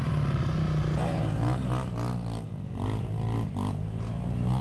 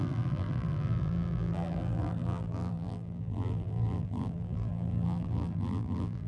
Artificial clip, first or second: second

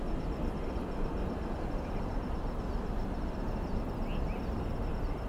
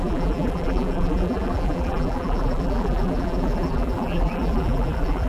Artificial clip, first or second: second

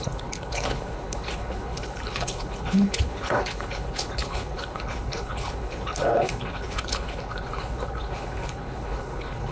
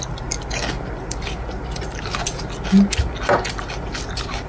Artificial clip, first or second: first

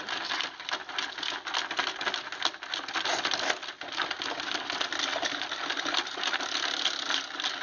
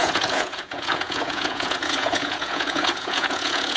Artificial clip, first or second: second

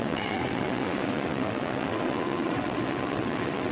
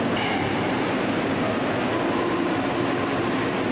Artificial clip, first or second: first